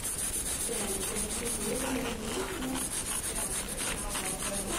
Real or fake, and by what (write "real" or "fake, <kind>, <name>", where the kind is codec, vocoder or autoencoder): real